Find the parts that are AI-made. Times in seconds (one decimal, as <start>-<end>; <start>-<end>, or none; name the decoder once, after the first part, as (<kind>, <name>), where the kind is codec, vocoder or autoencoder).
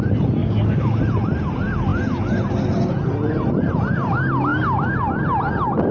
0.4-1.0 (codec, DAC)